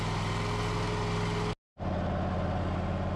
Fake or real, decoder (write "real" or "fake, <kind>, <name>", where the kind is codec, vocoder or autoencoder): real